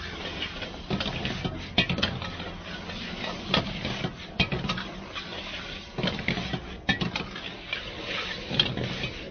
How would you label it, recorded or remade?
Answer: recorded